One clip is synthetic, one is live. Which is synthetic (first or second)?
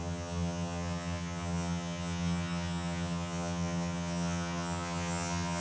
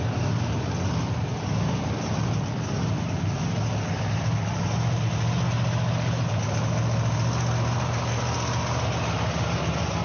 first